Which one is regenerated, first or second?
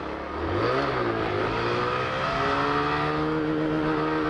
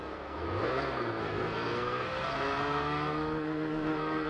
second